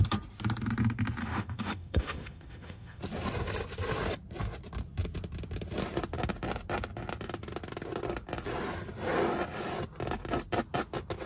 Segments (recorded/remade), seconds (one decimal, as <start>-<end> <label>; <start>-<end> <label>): 0.0-1.2 recorded; 1.2-3.0 remade; 3.0-11.3 recorded